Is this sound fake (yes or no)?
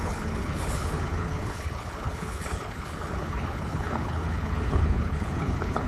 yes